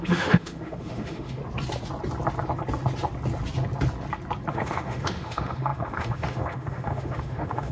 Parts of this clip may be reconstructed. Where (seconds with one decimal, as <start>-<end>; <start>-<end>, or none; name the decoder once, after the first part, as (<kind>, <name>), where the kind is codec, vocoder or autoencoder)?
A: 0.0-1.4 (autoencoder, DAC-VAE); 4.5-7.7